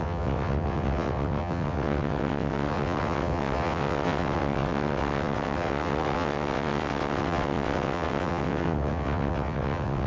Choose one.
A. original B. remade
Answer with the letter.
B